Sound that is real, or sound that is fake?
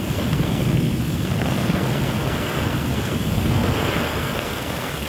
fake